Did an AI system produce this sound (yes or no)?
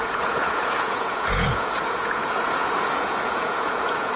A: yes